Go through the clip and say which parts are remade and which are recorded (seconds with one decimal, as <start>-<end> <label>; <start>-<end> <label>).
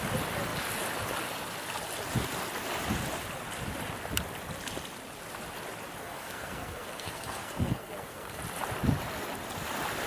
0.0-6.0 recorded; 6.0-8.4 remade; 8.4-10.1 recorded